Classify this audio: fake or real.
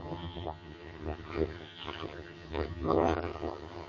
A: fake